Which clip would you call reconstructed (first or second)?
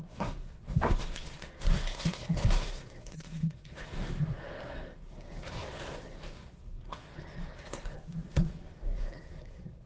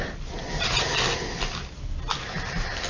first